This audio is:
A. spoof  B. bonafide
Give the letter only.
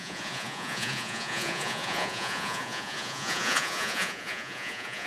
A